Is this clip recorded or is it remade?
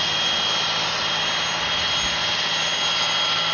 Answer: recorded